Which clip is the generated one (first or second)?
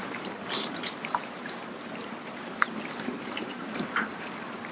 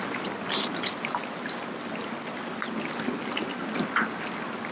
first